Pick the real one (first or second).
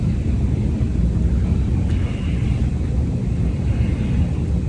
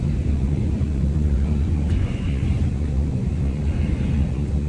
first